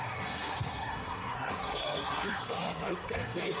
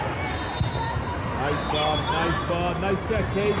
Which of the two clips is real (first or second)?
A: second